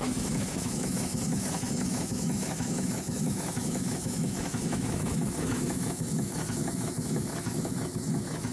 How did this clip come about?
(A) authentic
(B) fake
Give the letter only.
B